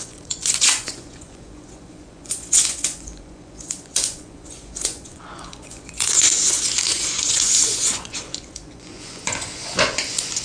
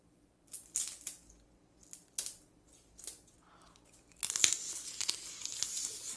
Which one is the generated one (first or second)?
first